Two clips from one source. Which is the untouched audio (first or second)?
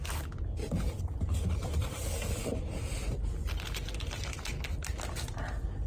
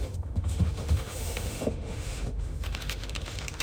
first